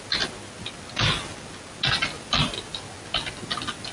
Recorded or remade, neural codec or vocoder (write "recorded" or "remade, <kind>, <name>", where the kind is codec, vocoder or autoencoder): recorded